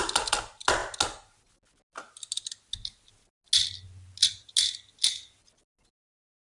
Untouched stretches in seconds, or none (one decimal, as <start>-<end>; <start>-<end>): 0.0-6.4